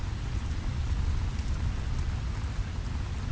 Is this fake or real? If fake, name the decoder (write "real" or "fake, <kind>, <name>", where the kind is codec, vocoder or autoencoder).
real